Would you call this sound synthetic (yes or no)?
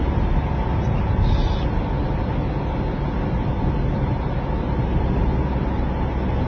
no